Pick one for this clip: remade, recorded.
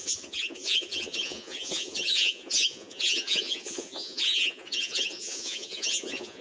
remade